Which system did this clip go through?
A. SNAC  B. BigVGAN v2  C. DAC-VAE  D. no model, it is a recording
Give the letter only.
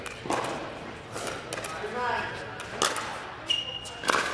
D